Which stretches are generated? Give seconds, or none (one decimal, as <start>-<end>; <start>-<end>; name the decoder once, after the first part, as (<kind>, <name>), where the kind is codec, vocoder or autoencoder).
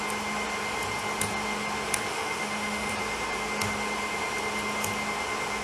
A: 2.1-2.9 (autoencoder, DAC-VAE)